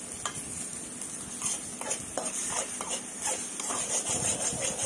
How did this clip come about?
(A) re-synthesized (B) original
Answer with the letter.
B